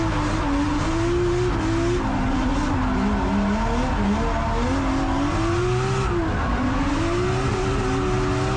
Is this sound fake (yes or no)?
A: no